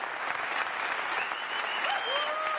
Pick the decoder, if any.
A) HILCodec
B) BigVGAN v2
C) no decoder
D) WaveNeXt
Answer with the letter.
C